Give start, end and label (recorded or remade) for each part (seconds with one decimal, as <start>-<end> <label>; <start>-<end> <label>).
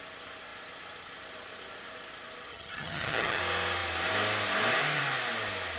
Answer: 0.0-2.5 recorded; 2.5-3.4 remade; 3.4-5.8 recorded